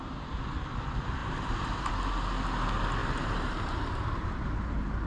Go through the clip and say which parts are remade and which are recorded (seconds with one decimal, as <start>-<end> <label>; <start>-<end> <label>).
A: 0.0-1.2 recorded; 1.2-1.9 remade; 1.9-3.0 recorded; 3.0-3.9 remade; 3.9-5.1 recorded